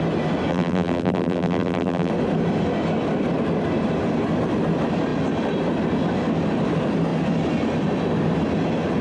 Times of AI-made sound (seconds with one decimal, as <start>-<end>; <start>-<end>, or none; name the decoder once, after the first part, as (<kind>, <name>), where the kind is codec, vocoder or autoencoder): 0.5-2.1 (vocoder, BigVGAN v2)